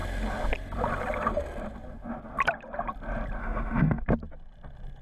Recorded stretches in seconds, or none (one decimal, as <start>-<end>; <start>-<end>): 0.0-3.4; 4.0-5.0